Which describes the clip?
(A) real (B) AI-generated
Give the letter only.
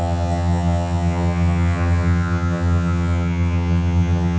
B